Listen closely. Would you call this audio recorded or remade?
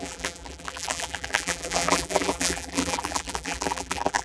remade